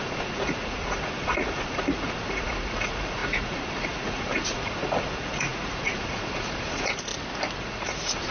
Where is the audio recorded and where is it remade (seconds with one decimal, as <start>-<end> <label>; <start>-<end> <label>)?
0.0-7.1 remade; 7.1-7.6 recorded; 7.6-8.3 remade